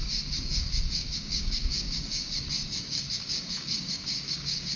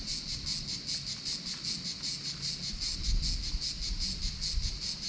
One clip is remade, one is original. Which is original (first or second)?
second